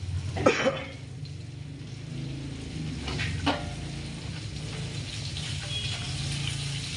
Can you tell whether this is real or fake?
real